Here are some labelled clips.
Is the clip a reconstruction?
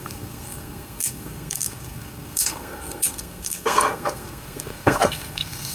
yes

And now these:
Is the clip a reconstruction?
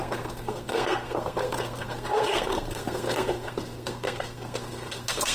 yes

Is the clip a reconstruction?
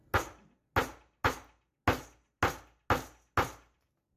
no